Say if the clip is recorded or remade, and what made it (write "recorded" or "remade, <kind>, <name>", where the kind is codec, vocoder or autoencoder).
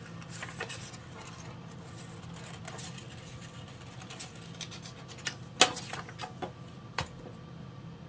recorded